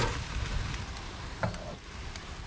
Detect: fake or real real